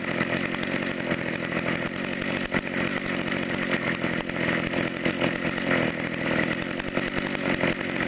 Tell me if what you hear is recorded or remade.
recorded